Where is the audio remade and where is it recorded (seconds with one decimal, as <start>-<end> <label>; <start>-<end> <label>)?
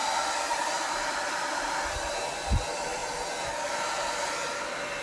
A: 0.0-2.6 remade; 2.6-5.0 recorded